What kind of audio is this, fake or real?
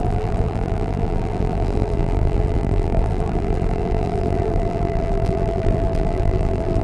fake